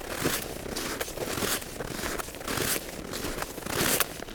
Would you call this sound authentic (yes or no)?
yes